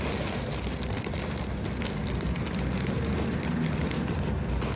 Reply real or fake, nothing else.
real